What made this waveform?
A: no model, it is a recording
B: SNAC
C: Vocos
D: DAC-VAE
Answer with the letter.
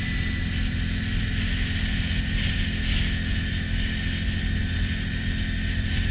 A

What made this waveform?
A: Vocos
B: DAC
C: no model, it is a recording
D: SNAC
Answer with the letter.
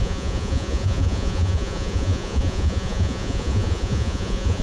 A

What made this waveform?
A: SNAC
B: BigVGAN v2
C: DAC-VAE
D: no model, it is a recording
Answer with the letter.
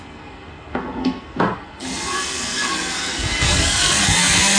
A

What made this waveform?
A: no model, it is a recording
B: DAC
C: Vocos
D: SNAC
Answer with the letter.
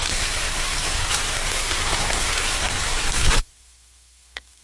D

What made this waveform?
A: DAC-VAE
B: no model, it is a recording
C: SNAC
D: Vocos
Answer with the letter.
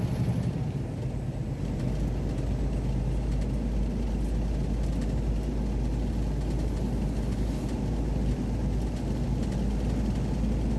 B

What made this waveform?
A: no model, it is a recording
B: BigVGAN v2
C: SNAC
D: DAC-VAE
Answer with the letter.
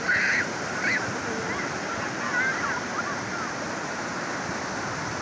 A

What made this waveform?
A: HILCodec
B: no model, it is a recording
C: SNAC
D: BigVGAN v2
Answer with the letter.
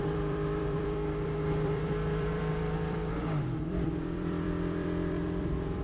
D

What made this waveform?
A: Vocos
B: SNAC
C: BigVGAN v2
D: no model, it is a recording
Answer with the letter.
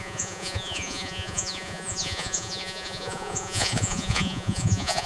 A